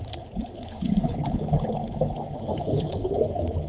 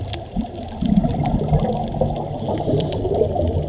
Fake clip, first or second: first